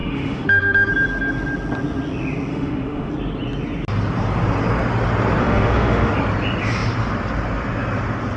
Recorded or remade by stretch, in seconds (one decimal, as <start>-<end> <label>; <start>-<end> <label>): 0.0-0.9 remade; 0.9-2.5 recorded; 2.5-3.1 remade; 3.1-5.4 recorded; 5.4-6.1 remade; 6.1-8.4 recorded